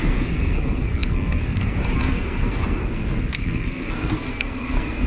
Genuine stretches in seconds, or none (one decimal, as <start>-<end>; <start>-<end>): none